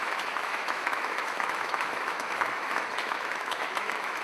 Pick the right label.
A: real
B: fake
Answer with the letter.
B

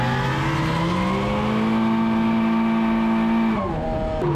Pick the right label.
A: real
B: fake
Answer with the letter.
A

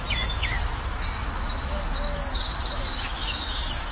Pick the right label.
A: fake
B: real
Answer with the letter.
A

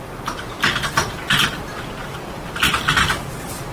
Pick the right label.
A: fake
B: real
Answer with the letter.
B